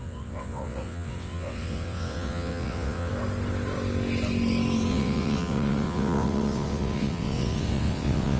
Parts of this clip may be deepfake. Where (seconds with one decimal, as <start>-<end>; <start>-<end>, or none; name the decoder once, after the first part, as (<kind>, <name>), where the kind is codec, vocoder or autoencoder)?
0.0-3.1 (vocoder, WaveNeXt); 4.9-8.4